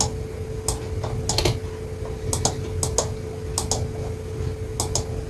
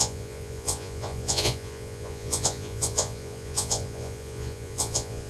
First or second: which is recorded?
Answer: first